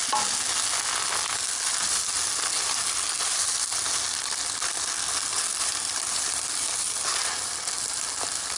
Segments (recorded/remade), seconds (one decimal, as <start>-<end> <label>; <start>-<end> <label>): 0.0-8.6 recorded